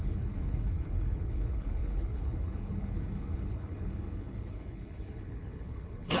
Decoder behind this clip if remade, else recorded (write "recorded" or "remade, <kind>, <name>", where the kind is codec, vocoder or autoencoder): remade, codec, HILCodec